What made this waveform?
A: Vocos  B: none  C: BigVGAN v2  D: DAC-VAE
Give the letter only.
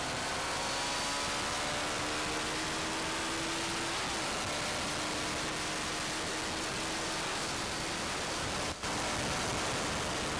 B